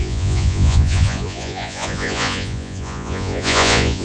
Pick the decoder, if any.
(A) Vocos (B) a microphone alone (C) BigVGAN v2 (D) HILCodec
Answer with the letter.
A